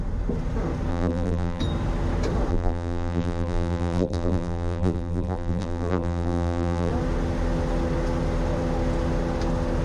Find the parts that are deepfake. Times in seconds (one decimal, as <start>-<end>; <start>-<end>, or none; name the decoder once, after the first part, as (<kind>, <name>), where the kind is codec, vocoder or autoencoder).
0.9-1.6 (vocoder, BigVGAN v2); 2.5-6.9